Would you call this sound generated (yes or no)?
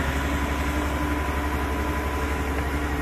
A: no